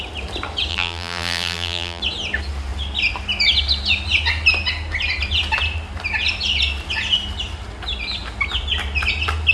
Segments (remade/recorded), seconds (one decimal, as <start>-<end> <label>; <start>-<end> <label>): 0.0-0.7 recorded; 0.7-2.0 remade; 2.0-9.5 recorded